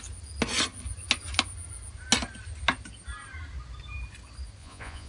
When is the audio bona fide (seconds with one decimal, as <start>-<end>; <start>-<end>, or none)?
0.0-4.6